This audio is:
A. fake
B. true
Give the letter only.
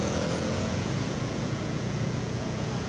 A